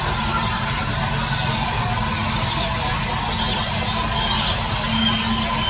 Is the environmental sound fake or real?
real